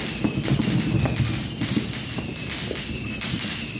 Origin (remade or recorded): recorded